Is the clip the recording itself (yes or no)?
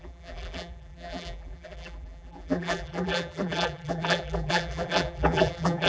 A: no